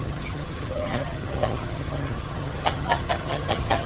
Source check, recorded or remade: remade